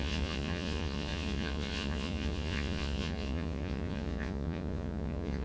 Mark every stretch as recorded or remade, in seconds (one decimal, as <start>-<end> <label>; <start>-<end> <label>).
0.0-5.4 remade